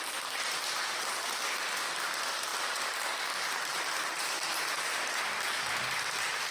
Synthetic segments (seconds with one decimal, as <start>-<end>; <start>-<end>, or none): none

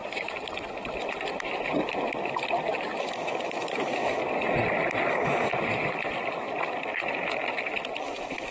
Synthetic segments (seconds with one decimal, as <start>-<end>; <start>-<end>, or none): 3.0-4.2; 5.1-5.5; 8.0-8.5

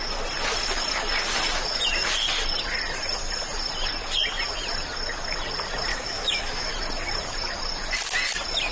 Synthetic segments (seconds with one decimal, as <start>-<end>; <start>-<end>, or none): 5.9-6.7

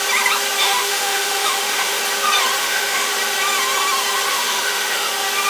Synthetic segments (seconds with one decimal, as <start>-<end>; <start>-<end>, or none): 0.6-2.0; 2.6-3.1; 4.3-5.1

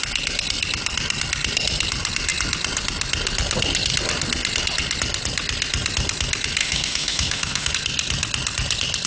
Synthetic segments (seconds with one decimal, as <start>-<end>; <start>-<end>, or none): 6.6-7.7